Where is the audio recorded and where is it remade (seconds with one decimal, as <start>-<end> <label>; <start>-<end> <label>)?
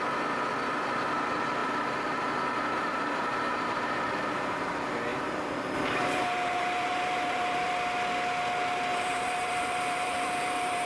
0.0-1.6 recorded; 1.6-3.9 remade; 3.9-5.1 recorded; 5.1-7.7 remade; 7.7-8.9 recorded; 8.9-10.9 remade